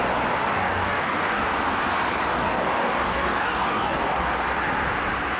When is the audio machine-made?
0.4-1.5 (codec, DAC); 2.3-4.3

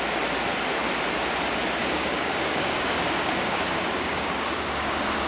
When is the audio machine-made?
1.8-5.3 (codec, DAC)

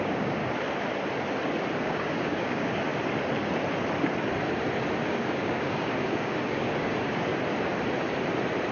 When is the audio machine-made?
0.0-0.4 (codec, DAC); 1.8-2.9; 5.0-7.3

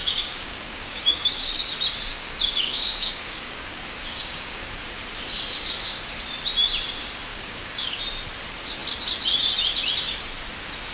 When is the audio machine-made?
0.0-1.7 (codec, DAC); 2.1-4.8; 7.3-8.0

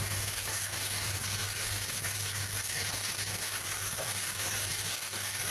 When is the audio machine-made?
0.0-5.5 (codec, DAC)

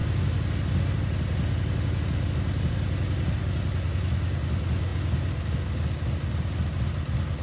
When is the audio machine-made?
none

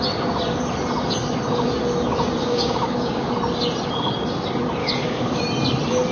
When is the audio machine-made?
2.4-3.3 (codec, DAC); 4.8-5.4

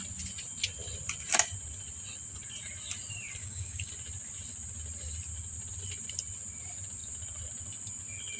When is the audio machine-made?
3.4-3.9 (codec, DAC)